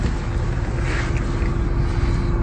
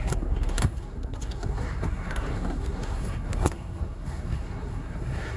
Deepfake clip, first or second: second